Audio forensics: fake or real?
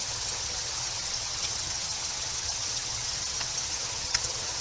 fake